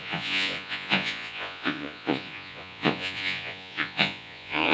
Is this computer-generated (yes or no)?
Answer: yes